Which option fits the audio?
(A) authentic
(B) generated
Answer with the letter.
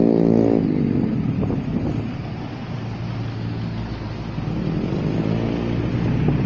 A